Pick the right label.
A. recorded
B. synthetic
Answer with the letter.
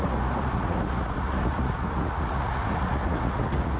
B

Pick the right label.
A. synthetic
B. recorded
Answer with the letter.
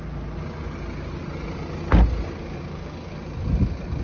B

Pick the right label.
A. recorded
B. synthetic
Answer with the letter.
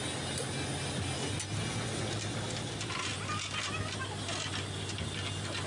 A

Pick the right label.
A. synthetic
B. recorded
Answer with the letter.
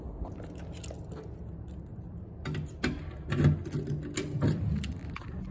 B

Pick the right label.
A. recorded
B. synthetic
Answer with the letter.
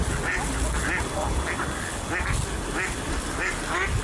A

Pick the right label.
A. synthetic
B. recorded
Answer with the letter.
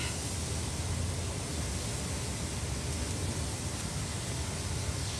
B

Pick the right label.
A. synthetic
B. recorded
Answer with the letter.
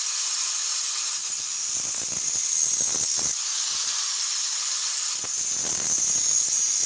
B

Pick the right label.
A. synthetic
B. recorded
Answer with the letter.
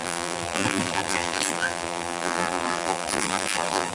A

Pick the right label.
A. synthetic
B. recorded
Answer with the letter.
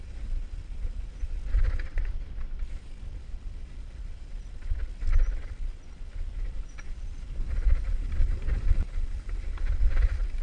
B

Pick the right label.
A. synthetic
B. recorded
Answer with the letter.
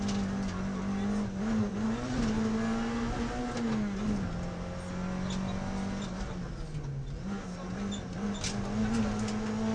B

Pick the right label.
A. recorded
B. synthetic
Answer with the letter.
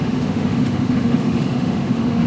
B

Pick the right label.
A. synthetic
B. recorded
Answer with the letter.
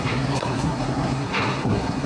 A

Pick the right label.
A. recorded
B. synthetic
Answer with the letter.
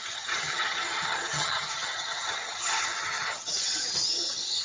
B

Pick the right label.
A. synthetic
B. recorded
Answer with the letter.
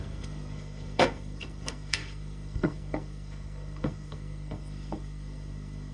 A